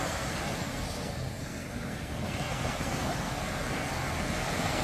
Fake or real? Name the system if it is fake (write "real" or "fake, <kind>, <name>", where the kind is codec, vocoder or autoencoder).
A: fake, codec, SNAC